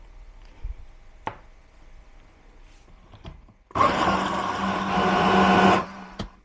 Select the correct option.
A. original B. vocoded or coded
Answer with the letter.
A